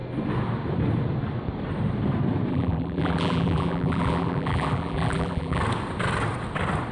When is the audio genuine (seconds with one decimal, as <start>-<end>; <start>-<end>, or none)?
0.0-2.5; 5.6-6.9